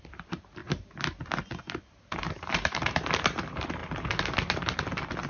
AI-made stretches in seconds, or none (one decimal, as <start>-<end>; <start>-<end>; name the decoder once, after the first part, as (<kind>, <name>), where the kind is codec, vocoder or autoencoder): 0.0-0.6 (vocoder, BigVGAN v2); 1.8-3.8